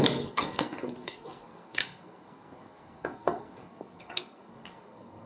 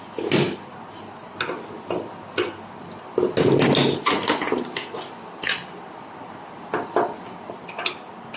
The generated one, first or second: first